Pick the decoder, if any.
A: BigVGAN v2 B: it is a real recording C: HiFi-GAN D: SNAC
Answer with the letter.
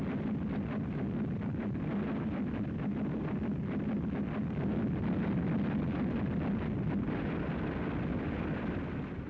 B